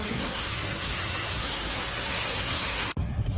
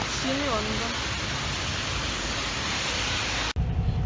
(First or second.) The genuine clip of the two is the second